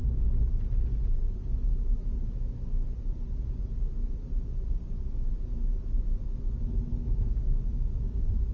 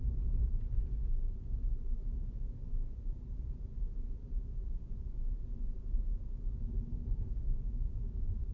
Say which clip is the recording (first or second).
first